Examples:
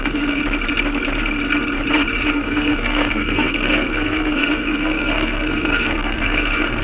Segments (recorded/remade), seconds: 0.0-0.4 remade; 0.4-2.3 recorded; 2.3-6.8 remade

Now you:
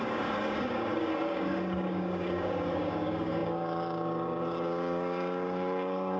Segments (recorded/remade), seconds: 0.0-6.2 remade

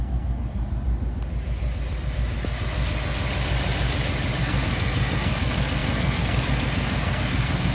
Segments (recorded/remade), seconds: 0.0-0.6 remade; 0.6-4.4 recorded; 4.4-7.7 remade

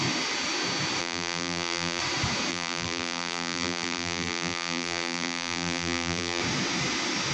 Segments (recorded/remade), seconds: 0.0-1.0 recorded; 1.0-2.0 remade; 2.0-2.5 recorded; 2.5-6.4 remade; 6.4-7.3 recorded